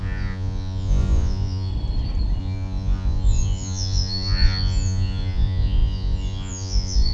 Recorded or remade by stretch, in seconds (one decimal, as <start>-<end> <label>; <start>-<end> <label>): 0.0-1.7 remade; 1.7-2.4 recorded; 2.4-7.1 remade